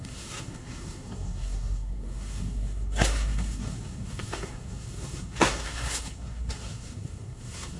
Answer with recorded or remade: remade